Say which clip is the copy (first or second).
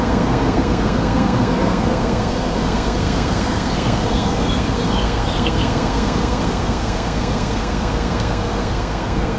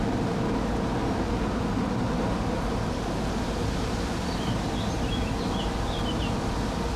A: first